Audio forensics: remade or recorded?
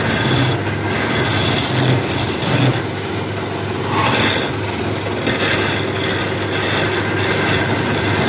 recorded